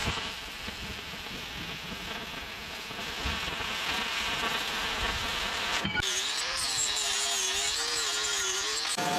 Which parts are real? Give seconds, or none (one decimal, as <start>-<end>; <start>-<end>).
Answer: 1.4-5.3; 7.1-9.2

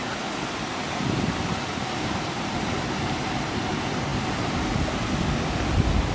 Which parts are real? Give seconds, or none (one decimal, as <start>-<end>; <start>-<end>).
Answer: 0.0-6.1

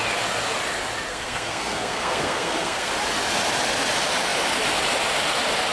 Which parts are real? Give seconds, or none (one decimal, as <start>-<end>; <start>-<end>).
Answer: 0.0-1.1; 2.9-5.7

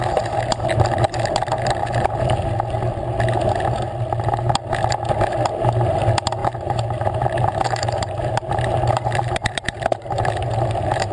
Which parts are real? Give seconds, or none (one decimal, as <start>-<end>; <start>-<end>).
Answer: 0.0-1.8; 2.4-6.4